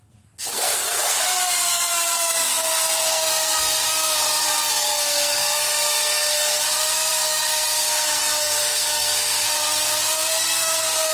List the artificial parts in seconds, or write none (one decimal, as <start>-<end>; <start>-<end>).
0.0-11.1

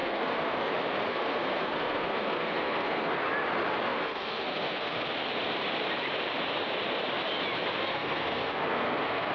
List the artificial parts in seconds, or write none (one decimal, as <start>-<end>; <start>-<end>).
0.0-0.7; 1.1-3.1; 3.9-5.1; 7.9-9.3

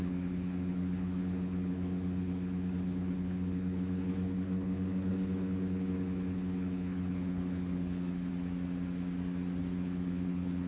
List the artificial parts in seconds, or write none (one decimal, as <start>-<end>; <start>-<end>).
0.0-8.3; 9.6-10.7